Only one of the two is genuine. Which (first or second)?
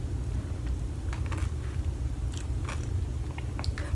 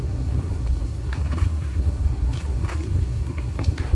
first